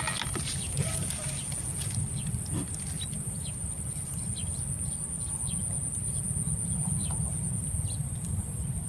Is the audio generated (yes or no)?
no